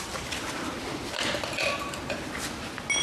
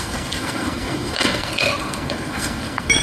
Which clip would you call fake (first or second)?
second